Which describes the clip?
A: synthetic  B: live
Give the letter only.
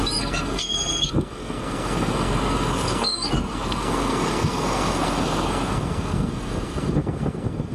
A